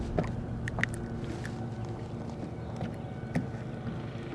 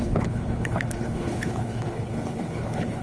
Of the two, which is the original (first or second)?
first